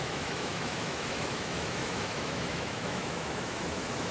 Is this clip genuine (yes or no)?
no